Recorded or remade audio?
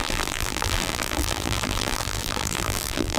remade